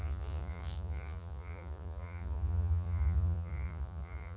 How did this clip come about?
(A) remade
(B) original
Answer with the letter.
A